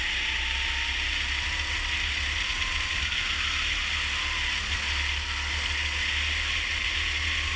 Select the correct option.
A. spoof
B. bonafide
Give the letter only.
B